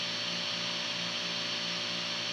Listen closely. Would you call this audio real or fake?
real